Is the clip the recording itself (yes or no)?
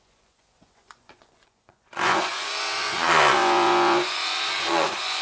no